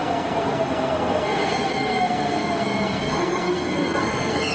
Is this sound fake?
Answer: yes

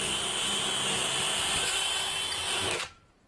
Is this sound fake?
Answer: no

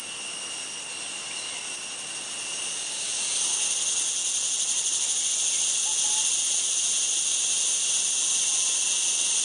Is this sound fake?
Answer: no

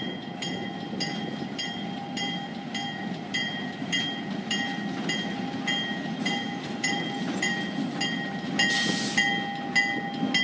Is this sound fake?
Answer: no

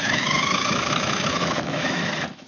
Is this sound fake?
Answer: yes